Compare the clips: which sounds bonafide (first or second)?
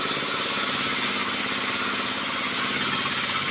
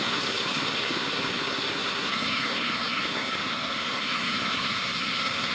first